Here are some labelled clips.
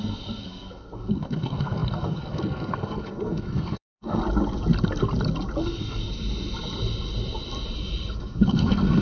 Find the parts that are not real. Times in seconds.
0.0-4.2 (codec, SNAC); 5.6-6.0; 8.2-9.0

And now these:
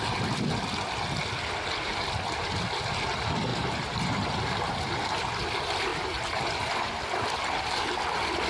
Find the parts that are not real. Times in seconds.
3.5-4.7 (vocoder, BigVGAN v2); 5.9-7.6

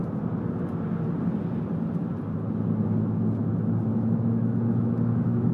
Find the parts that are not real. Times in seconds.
3.9-5.5 (autoencoder, DAC-VAE)

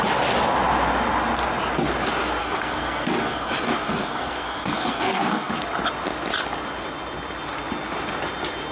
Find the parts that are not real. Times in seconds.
2.4-5.5 (codec, SNAC)

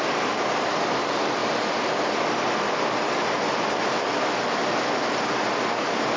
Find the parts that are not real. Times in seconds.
0.0-1.4 (vocoder, BigVGAN v2); 3.8-4.6; 5.8-6.2

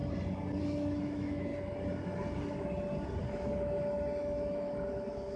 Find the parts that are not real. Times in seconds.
0.6-1.5 (autoencoder, DAC-VAE); 3.2-5.4